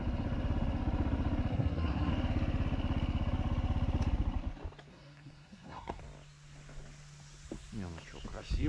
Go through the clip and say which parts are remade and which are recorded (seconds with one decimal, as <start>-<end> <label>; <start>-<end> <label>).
0.0-1.5 recorded; 1.5-2.1 remade; 2.1-4.9 recorded; 4.9-6.0 remade; 6.0-8.7 recorded